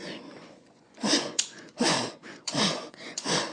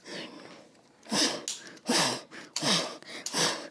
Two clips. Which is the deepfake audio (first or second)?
first